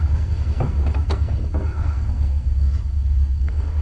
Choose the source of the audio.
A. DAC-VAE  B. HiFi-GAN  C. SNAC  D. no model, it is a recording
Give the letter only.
C